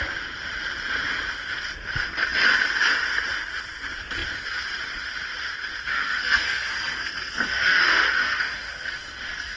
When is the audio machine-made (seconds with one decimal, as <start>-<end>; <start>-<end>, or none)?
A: 5.9-9.6